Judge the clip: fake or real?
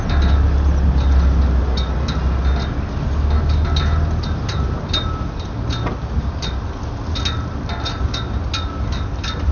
real